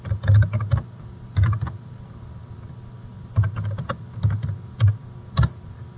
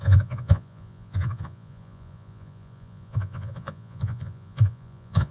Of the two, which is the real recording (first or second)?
first